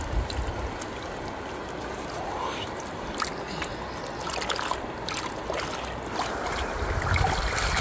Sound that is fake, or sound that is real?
real